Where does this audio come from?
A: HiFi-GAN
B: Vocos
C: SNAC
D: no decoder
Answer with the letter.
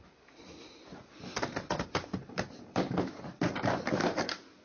D